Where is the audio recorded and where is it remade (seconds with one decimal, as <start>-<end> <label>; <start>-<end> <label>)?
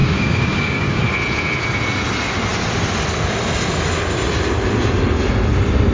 0.0-1.0 remade; 1.0-5.9 recorded